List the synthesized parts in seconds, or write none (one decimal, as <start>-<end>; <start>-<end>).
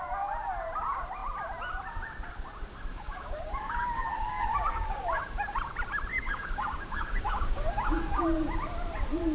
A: 2.9-5.2; 6.1-8.2